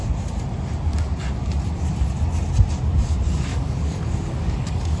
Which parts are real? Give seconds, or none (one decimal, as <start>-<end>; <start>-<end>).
0.0-3.5